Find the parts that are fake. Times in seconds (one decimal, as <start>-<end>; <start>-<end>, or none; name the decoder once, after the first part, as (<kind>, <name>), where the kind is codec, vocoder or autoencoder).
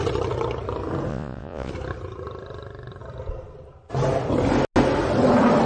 1.1-1.7 (vocoder, Vocos)